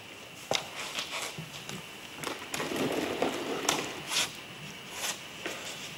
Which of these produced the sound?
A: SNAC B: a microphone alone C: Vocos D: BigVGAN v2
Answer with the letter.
B